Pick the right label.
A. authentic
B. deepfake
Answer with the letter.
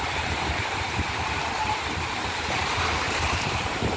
B